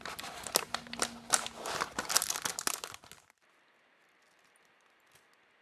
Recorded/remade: recorded